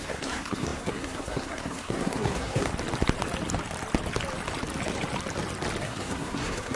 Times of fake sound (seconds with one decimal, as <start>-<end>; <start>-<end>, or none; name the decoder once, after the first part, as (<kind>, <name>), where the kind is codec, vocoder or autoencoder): 0.0-2.7 (codec, SNAC); 5.8-6.8